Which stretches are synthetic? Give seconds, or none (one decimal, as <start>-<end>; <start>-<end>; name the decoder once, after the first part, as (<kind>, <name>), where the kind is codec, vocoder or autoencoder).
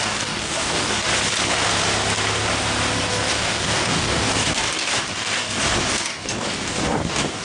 0.0-1.1 (codec, DAC); 3.1-7.4